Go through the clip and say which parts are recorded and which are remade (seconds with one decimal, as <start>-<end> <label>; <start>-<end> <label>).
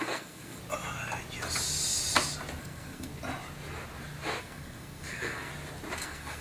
0.0-0.6 remade; 0.6-2.6 recorded; 2.6-3.1 remade; 3.1-4.4 recorded; 4.4-5.5 remade; 5.5-6.0 recorded; 6.0-6.4 remade